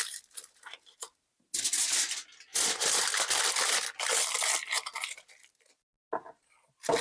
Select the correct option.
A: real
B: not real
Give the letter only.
A